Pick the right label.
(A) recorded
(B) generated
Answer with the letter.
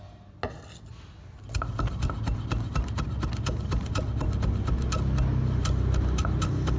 A